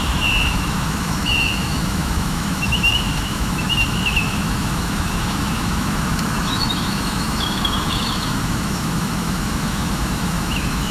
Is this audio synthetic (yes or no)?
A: yes